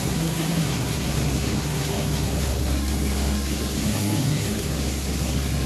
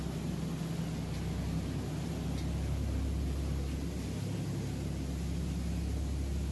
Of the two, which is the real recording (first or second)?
second